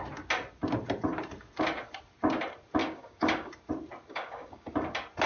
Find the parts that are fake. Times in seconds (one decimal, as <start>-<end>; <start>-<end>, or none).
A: 2.8-3.5; 4.1-4.7